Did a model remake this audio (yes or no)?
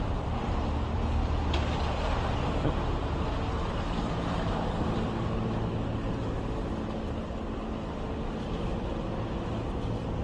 no